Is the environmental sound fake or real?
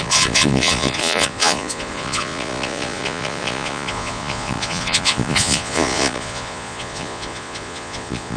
fake